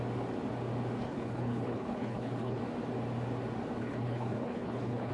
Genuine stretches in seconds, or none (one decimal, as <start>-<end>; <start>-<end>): 0.0-1.0; 2.6-3.8